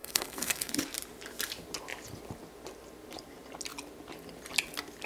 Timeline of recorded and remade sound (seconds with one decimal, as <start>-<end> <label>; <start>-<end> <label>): 0.0-0.7 remade; 0.7-5.1 recorded

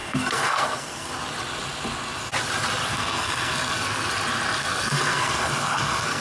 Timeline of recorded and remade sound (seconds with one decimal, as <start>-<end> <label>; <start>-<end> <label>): 0.0-1.1 remade; 1.1-2.9 recorded; 2.9-4.1 remade; 4.1-4.6 recorded; 4.6-6.2 remade

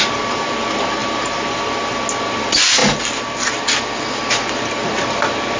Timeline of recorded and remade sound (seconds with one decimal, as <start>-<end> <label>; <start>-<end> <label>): 0.0-5.6 recorded

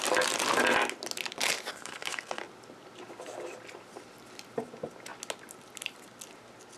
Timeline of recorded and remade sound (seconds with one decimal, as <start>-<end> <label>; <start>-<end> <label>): 0.0-1.7 recorded; 1.7-2.4 remade; 2.4-6.8 recorded